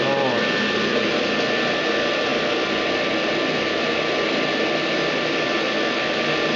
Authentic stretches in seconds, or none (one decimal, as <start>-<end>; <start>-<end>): 0.0-6.6